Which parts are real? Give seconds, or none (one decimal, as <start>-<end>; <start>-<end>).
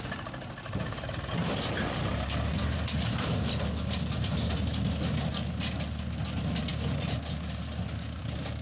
0.0-8.6